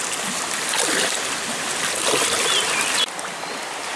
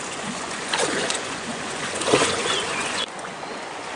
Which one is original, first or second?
first